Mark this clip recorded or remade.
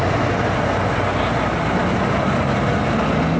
recorded